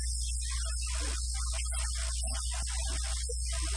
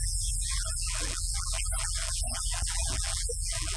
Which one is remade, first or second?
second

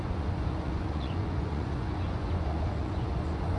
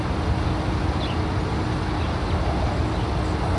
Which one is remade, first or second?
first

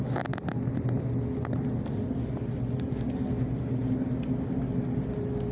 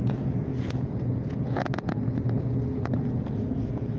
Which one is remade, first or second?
second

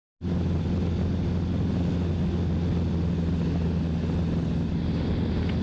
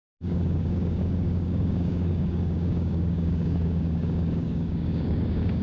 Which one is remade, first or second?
second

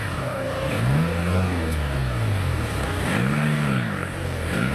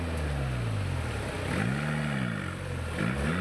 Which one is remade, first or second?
first